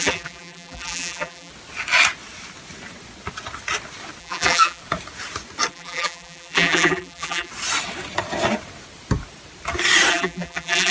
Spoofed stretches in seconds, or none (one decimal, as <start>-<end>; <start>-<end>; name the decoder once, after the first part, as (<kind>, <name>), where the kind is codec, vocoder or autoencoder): 0.0-1.5 (vocoder, BigVGAN v2); 4.2-4.8; 5.7-7.5; 10.1-10.9